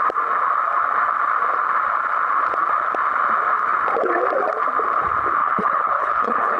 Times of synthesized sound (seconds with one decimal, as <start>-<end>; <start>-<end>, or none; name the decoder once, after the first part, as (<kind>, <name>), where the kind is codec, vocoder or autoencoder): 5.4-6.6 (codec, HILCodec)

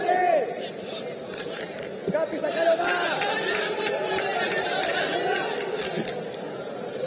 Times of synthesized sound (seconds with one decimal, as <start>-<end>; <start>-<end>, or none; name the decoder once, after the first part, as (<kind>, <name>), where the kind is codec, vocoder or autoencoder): none

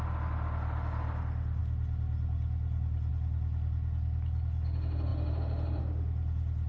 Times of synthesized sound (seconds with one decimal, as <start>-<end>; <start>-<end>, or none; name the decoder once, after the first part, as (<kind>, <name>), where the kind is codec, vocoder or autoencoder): 5.1-5.8 (vocoder, BigVGAN v2)

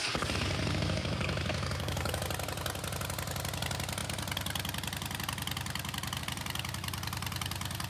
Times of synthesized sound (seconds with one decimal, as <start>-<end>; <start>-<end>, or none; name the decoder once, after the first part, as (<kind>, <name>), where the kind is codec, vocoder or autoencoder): 0.0-2.2 (codec, DAC)

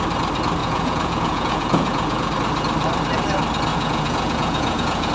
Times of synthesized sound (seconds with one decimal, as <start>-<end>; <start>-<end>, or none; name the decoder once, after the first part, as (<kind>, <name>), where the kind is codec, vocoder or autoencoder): 0.6-2.3 (vocoder, Vocos); 3.7-5.1